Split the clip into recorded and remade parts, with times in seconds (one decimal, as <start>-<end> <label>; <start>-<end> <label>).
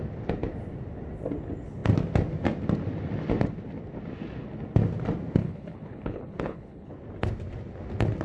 0.0-5.4 recorded; 5.4-6.9 remade; 6.9-8.2 recorded